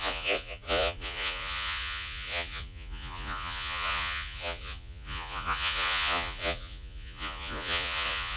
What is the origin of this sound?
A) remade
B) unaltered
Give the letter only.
A